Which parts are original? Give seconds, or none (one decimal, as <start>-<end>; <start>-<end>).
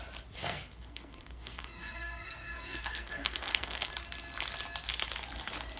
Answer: 0.0-0.4; 3.9-5.8